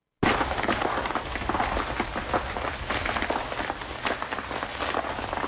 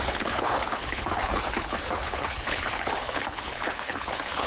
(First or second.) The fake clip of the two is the second